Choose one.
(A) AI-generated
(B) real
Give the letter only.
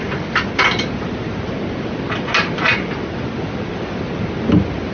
B